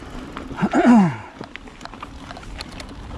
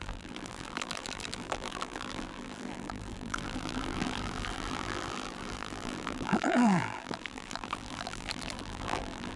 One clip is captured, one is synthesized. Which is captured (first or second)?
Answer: first